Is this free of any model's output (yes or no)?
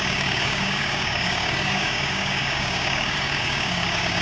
no